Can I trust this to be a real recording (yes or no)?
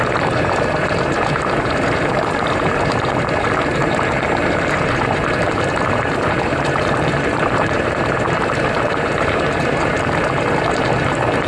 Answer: no